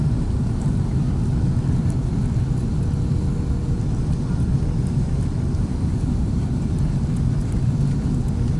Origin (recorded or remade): recorded